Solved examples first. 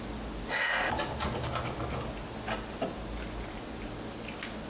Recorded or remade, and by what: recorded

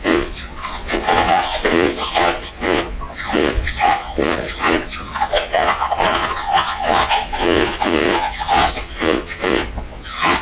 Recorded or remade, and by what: remade, vocoder, Vocos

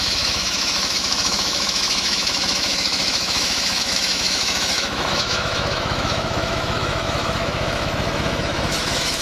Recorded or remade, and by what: remade, autoencoder, DAC-VAE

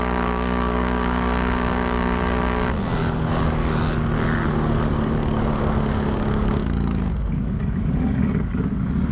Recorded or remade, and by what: remade, codec, DAC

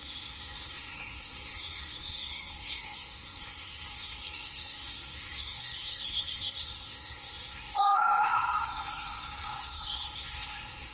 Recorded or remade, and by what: remade, codec, SNAC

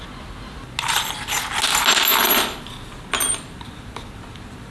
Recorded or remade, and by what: recorded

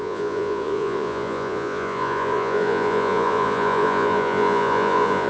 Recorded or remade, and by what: remade, vocoder, Vocos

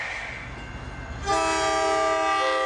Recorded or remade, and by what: recorded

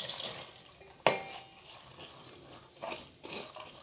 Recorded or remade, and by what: recorded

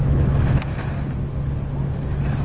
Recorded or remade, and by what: recorded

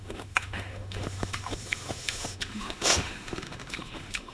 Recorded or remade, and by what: remade, autoencoder, DAC-VAE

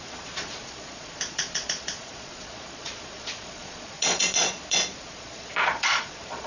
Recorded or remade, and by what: remade, vocoder, Vocos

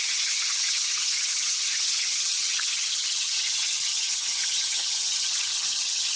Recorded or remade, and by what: remade, vocoder, HiFi-GAN